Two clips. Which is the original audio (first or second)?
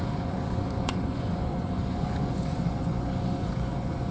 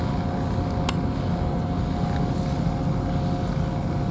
second